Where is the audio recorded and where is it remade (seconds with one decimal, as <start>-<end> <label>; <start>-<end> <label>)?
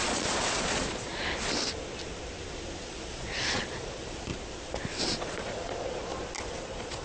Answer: 0.0-1.1 remade; 1.1-2.8 recorded; 2.8-4.3 remade; 4.3-5.0 recorded; 5.0-6.1 remade; 6.1-6.6 recorded; 6.6-7.0 remade